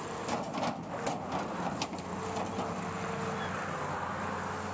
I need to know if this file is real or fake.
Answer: real